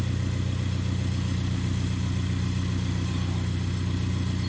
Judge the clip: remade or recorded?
recorded